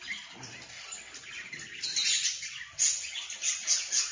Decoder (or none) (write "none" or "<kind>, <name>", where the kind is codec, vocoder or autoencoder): none